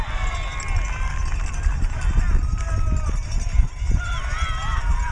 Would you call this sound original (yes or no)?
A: yes